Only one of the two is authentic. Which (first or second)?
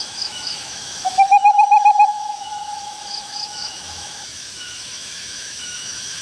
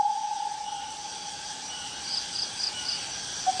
second